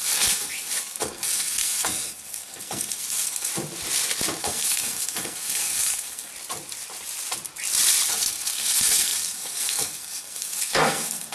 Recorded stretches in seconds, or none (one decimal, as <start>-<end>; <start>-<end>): 3.5-4.4; 6.3-8.1